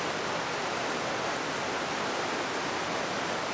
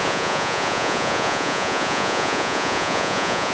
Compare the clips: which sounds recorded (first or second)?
first